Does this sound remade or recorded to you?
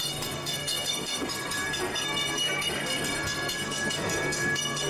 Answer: remade